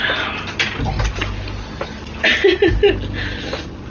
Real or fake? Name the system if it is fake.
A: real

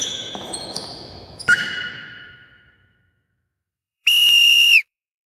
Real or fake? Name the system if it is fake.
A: fake, autoencoder, DAC-VAE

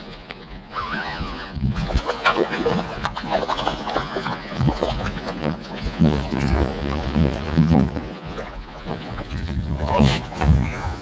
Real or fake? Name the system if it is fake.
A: fake, vocoder, Vocos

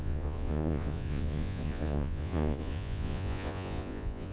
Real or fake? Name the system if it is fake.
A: fake, vocoder, Vocos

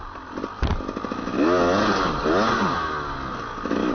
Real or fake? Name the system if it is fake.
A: real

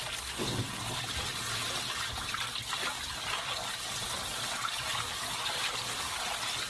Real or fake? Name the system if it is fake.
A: real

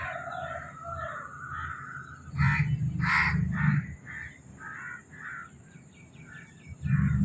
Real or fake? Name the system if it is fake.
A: real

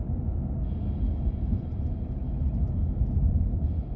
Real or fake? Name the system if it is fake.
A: real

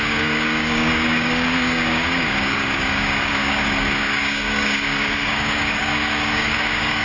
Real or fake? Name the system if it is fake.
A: fake, codec, DAC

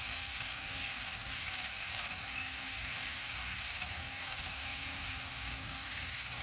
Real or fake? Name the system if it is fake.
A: fake, codec, DAC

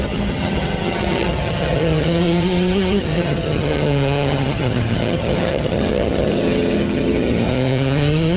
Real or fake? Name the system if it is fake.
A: fake, vocoder, HiFi-GAN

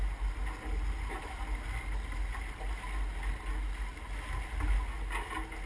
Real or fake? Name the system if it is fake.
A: real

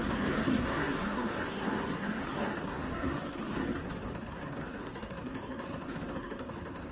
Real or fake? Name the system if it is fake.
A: fake, codec, SNAC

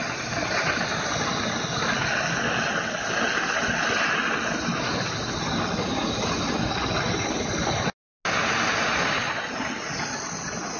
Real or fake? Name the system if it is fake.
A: real